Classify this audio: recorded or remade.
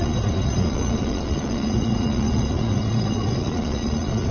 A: remade